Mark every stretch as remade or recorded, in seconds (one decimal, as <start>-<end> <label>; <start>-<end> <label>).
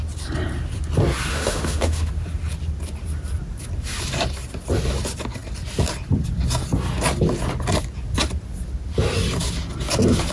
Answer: 0.0-1.3 recorded; 1.3-2.1 remade; 2.1-10.3 recorded